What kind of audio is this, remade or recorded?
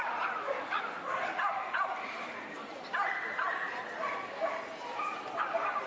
remade